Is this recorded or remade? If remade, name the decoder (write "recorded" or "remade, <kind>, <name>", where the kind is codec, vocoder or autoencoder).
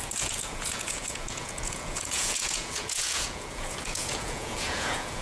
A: remade, vocoder, Vocos